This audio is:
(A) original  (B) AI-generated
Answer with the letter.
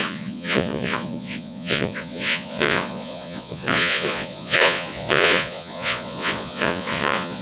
B